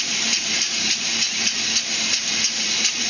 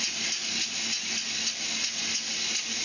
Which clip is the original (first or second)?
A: second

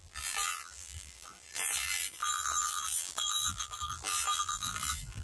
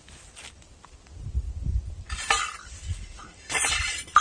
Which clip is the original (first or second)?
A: second